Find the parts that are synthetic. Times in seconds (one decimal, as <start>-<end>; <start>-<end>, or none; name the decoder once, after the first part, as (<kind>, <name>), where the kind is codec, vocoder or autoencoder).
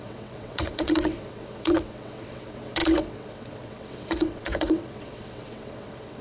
0.0-6.2 (vocoder, WaveNeXt)